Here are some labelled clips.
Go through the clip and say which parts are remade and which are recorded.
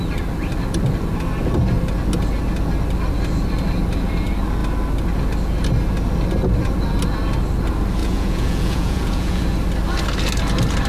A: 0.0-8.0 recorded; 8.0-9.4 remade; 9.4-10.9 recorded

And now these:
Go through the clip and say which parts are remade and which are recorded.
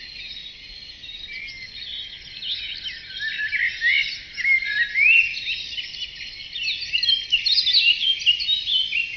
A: 0.0-0.4 recorded; 0.4-1.2 remade; 1.2-9.2 recorded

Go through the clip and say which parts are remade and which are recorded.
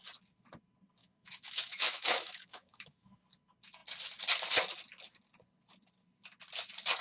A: 0.0-1.0 recorded; 1.0-3.2 remade; 3.2-7.0 recorded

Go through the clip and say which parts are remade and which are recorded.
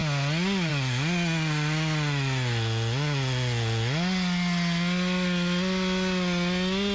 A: 0.0-6.9 recorded